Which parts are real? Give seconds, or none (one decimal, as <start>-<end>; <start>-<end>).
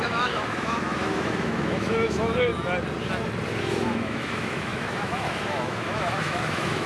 2.5-3.6